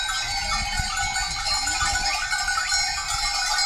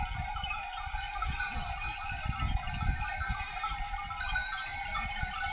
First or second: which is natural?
first